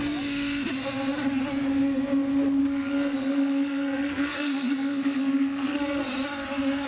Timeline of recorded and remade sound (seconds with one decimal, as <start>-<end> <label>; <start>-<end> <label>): 0.0-2.6 recorded; 2.6-6.0 remade; 6.0-6.9 recorded